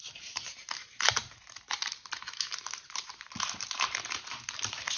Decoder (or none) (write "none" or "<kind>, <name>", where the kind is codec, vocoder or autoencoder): vocoder, BigVGAN v2